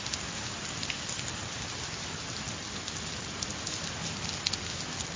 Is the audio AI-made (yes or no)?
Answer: no